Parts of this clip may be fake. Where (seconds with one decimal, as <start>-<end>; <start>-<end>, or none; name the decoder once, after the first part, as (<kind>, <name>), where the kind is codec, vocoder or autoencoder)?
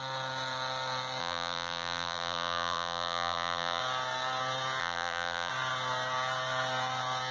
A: 1.2-3.8 (vocoder, BigVGAN v2); 4.8-5.5